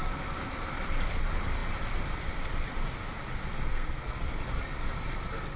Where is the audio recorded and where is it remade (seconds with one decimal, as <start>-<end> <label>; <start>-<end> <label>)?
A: 0.0-3.7 recorded; 3.7-4.3 remade; 4.3-5.6 recorded